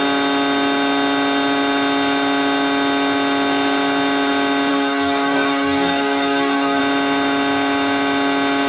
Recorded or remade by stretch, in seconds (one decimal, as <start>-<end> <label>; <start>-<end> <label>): 0.0-4.7 recorded; 4.7-6.8 remade; 6.8-8.7 recorded

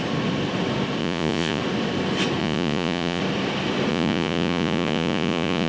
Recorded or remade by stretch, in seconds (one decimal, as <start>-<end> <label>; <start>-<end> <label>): 0.0-1.0 recorded; 1.0-1.6 remade; 1.6-2.4 recorded; 2.4-3.2 remade; 3.2-3.9 recorded; 3.9-5.7 remade

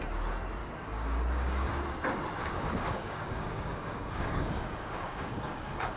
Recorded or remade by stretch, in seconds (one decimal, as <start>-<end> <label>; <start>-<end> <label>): 0.0-0.6 recorded; 0.6-1.7 remade; 1.7-2.4 recorded; 2.4-6.0 remade

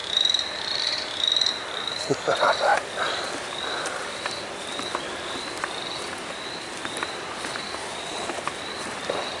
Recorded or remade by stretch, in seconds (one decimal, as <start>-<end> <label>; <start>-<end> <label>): 0.0-9.4 remade